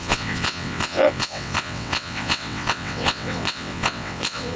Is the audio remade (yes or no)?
yes